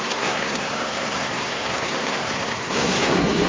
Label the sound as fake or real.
fake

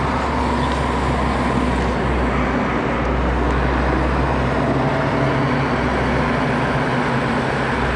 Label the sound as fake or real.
real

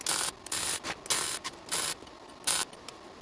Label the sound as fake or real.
real